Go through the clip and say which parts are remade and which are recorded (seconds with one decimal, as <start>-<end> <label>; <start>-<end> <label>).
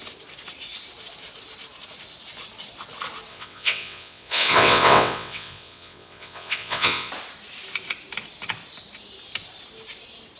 0.0-3.3 recorded; 3.3-7.1 remade; 7.1-10.4 recorded